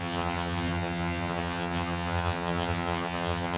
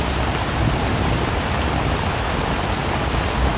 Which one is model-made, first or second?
first